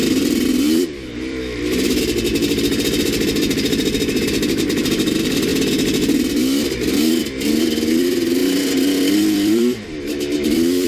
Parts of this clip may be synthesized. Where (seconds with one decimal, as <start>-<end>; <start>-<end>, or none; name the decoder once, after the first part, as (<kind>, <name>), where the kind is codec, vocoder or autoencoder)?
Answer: 0.0-5.5 (vocoder, BigVGAN v2); 6.4-10.9